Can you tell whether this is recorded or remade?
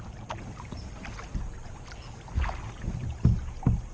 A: recorded